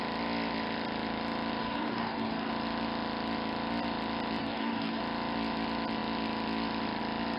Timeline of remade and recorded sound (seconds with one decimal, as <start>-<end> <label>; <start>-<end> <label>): 0.0-1.6 recorded; 1.6-2.5 remade; 2.5-4.4 recorded; 4.4-5.0 remade; 5.0-7.4 recorded